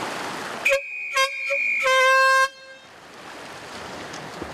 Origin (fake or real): real